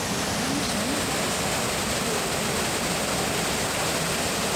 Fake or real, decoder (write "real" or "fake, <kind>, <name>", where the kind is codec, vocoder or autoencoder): real